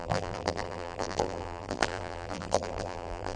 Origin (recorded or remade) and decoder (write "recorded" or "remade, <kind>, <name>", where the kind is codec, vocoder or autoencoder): remade, vocoder, BigVGAN v2